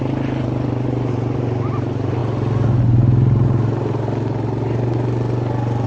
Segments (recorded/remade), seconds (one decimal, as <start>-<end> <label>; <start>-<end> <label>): 0.0-2.2 remade; 2.2-5.9 recorded